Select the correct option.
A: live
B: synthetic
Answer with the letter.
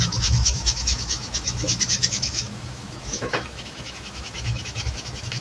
B